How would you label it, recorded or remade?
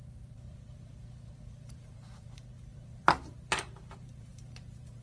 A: remade